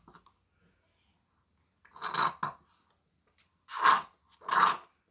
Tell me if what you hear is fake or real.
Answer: real